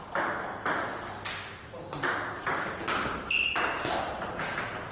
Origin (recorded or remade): recorded